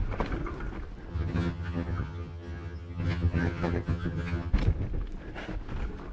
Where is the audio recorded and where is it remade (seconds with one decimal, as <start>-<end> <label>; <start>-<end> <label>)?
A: 0.0-1.1 recorded; 1.1-4.5 remade; 4.5-6.1 recorded